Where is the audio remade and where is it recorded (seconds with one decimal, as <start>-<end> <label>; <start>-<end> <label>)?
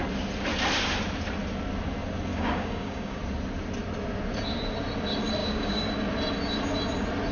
0.0-2.3 recorded; 2.3-3.2 remade; 3.2-5.4 recorded; 5.4-5.9 remade; 5.9-7.3 recorded